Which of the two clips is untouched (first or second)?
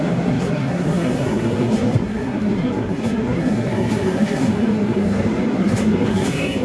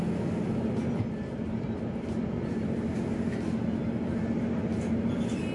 second